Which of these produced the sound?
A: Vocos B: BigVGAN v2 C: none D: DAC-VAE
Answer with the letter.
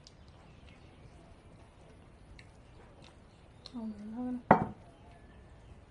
C